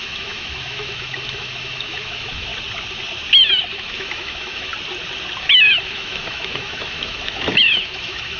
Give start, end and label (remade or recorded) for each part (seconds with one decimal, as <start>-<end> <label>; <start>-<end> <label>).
0.0-2.5 remade; 2.5-3.7 recorded; 3.7-4.7 remade; 4.7-5.4 recorded; 5.4-8.4 remade